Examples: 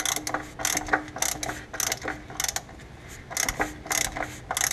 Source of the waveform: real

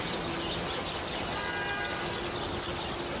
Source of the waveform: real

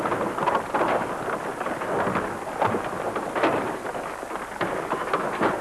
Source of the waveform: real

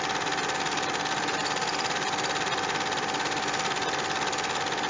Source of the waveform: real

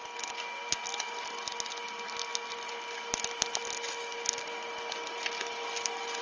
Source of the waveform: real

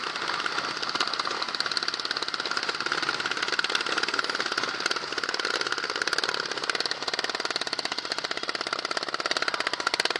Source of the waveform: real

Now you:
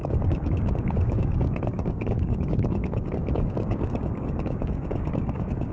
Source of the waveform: fake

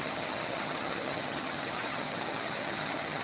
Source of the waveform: fake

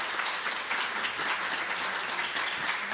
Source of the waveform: real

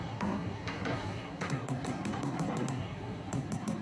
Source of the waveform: fake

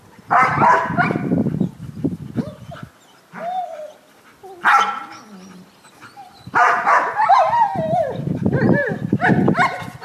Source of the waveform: real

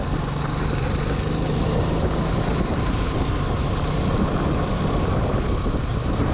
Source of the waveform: real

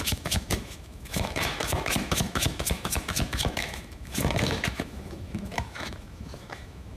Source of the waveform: fake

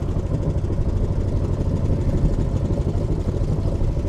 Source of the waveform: real